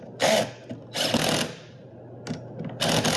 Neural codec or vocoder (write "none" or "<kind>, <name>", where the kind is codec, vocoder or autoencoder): none